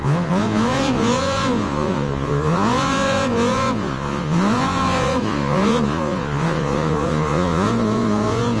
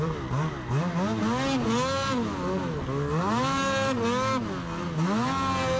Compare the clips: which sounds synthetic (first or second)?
first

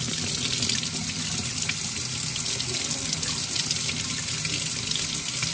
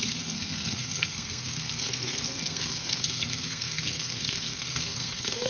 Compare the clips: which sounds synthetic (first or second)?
second